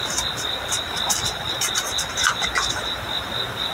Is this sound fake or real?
real